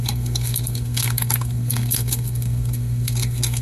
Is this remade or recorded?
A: remade